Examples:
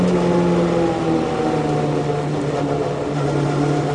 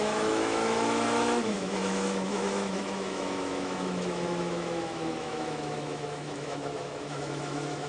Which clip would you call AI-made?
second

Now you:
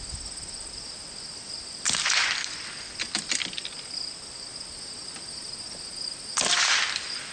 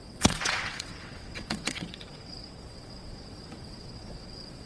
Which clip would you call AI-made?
second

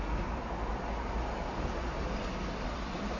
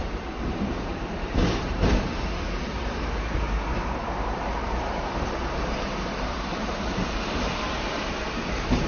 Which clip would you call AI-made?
second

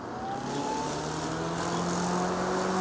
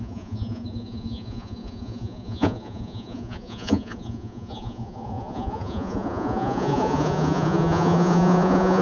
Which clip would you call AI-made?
second